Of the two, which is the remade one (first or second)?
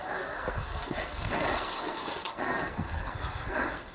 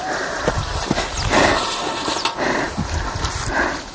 first